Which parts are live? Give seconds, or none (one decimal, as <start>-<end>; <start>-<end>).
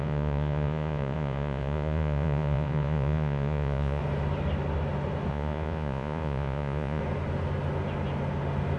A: 4.0-5.3; 7.0-8.8